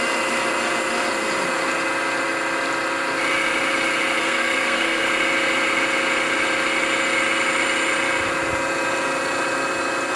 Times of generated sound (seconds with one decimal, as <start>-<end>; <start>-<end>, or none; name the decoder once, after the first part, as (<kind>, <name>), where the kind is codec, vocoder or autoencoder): 4.2-5.1 (codec, SNAC)